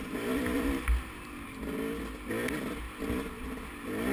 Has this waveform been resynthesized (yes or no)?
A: no